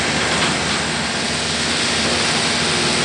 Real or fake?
real